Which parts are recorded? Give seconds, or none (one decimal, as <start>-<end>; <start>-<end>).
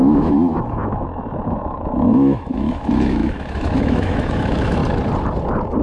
4.8-5.8